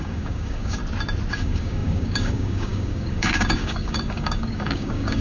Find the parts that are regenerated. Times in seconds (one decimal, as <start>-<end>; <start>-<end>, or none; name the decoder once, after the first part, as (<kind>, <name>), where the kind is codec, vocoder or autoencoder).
0.0-0.8 (codec, DAC); 1.3-5.2